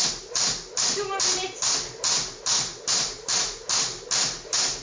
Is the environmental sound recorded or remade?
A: recorded